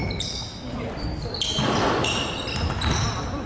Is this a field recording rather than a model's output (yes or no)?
no